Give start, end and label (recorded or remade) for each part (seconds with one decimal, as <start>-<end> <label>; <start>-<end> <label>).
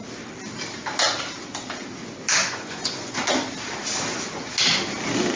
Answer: 0.0-2.4 recorded; 2.4-3.2 remade; 3.2-5.4 recorded